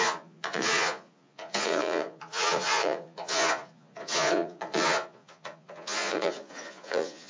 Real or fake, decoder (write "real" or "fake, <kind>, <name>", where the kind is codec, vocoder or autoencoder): fake, vocoder, Vocos